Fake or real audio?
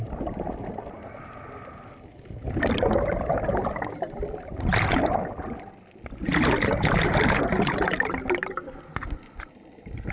real